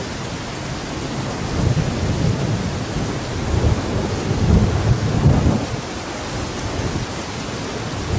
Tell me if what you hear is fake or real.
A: real